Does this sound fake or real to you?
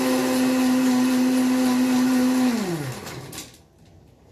real